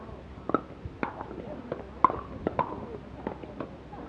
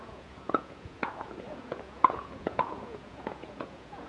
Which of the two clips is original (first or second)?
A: first